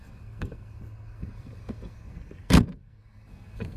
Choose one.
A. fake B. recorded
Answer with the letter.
A